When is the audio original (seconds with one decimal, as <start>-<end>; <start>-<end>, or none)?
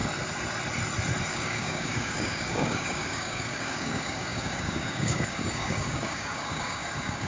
0.0-1.3